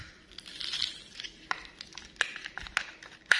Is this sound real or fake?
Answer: real